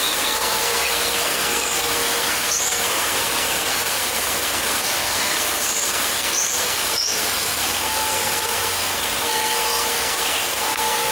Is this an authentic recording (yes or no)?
no